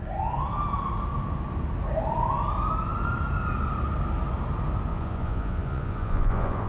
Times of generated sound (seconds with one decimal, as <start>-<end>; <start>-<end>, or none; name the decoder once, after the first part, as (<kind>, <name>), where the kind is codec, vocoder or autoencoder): 4.9-6.7 (vocoder, Vocos)

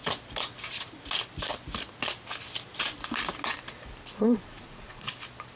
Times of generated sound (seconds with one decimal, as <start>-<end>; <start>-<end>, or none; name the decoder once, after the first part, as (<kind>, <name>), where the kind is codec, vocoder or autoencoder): 4.2-5.1 (vocoder, Vocos)

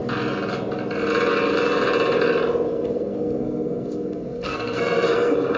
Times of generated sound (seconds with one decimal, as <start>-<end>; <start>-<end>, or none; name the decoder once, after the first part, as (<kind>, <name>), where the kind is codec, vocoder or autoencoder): 2.7-5.6 (codec, SNAC)

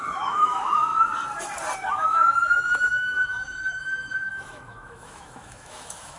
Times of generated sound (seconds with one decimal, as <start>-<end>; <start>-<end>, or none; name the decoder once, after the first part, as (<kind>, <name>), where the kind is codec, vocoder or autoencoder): 0.0-0.9 (autoencoder, DAC-VAE); 1.9-6.2

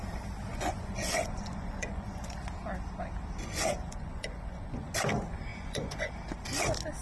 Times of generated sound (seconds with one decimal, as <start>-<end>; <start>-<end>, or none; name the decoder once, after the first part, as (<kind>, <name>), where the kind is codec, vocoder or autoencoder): 0.5-2.4 (vocoder, Vocos); 3.4-4.9; 5.5-6.1

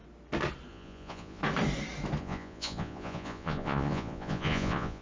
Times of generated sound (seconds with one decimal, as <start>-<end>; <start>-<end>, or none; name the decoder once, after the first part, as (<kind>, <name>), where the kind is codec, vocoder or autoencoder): 0.7-1.4 (vocoder, Vocos); 2.2-5.0

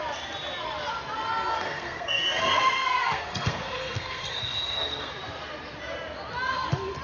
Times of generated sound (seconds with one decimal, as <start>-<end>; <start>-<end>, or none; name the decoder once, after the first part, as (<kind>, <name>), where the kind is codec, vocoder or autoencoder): 1.5-5.1 (codec, SNAC)

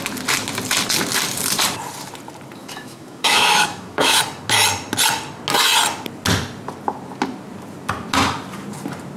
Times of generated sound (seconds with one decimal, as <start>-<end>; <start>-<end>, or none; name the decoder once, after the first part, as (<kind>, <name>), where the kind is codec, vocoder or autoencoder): 2.6-4.2 (autoencoder, DAC-VAE)